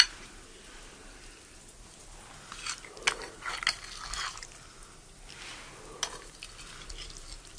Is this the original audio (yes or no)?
yes